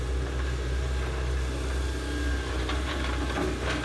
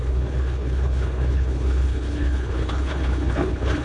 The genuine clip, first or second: first